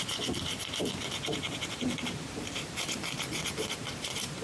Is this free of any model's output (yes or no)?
no